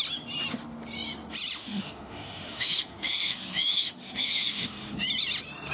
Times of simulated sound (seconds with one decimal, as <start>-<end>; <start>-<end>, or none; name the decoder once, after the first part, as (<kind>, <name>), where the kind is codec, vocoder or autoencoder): 1.6-5.0 (autoencoder, DAC-VAE)